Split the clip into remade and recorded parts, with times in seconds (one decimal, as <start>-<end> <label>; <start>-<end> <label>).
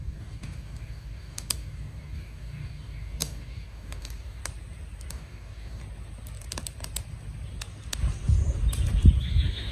0.0-4.4 remade; 4.4-5.1 recorded; 5.1-5.8 remade; 5.8-9.2 recorded; 9.2-9.7 remade